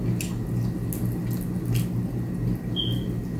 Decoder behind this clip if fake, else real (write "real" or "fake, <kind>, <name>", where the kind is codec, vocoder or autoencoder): real